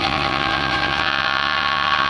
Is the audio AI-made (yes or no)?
yes